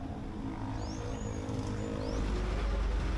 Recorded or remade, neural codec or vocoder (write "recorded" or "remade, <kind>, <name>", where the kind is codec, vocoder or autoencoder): recorded